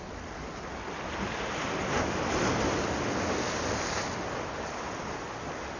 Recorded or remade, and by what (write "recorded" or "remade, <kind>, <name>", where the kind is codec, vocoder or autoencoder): recorded